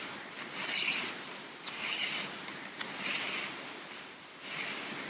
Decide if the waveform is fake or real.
real